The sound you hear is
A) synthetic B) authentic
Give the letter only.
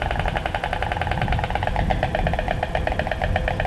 B